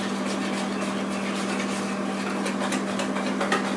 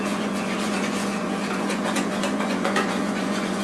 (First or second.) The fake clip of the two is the second